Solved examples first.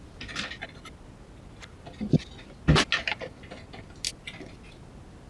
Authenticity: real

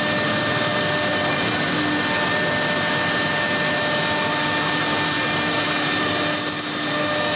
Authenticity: real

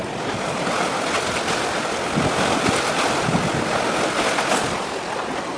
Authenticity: real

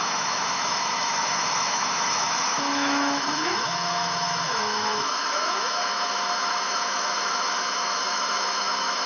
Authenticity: fake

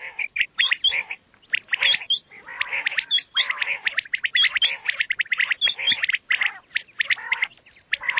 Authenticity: real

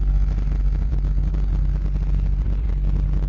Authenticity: real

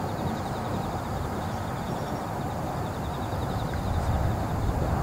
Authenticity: real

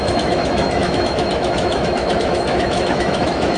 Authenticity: fake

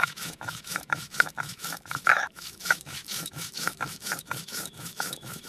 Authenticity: fake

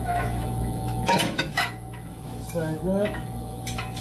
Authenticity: fake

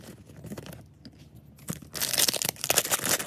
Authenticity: real